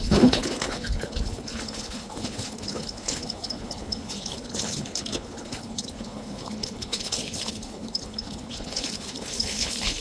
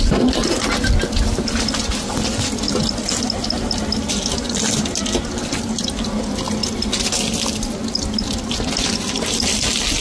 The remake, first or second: first